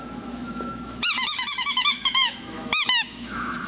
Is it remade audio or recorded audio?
remade